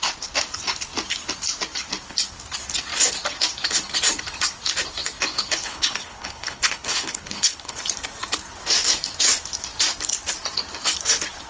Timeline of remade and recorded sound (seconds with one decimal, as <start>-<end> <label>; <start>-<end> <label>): 0.0-5.3 recorded; 5.3-7.8 remade; 7.8-11.5 recorded